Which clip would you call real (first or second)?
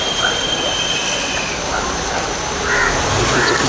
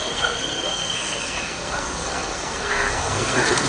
first